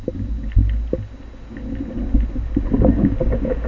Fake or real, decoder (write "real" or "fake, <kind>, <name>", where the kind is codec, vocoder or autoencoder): real